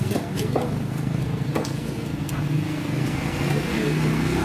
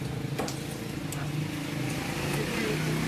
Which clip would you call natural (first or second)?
second